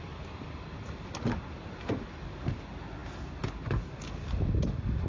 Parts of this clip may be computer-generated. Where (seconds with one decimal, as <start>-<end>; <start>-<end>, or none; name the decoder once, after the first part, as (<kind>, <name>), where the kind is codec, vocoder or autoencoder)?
none